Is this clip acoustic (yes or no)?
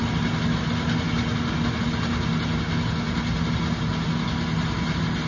yes